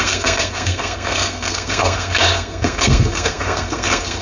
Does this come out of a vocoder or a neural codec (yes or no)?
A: yes